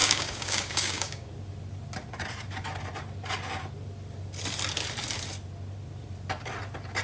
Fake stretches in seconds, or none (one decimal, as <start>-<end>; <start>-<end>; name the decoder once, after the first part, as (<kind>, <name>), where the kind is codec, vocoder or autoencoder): 0.0-1.3 (codec, DAC)